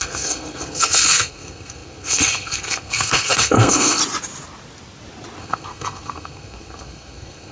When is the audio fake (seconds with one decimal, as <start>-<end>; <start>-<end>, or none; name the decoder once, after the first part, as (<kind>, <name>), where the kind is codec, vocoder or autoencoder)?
0.0-4.0 (codec, SNAC); 5.4-7.5